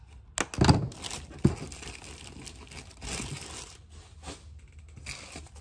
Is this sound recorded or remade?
recorded